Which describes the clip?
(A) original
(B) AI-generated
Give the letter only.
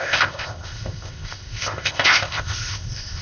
B